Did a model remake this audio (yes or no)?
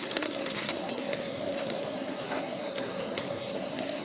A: yes